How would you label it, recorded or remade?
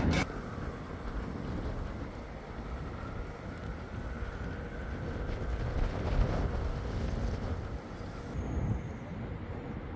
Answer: recorded